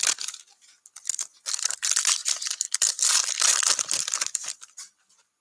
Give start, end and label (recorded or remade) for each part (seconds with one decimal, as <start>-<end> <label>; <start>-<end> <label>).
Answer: 0.0-2.2 recorded; 2.2-5.4 remade